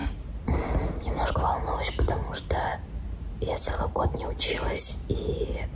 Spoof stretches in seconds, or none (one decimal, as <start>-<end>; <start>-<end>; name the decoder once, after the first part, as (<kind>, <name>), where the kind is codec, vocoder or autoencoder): 0.0-1.3 (vocoder, BigVGAN v2); 2.7-4.3